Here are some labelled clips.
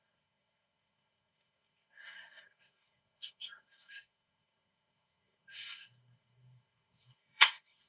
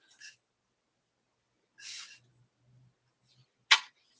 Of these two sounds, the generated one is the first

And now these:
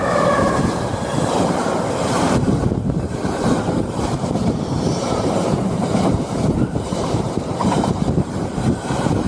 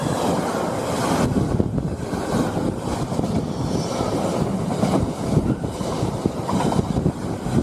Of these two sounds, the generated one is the first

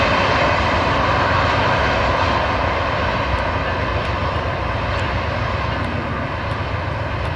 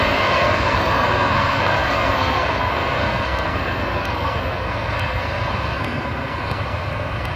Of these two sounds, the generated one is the second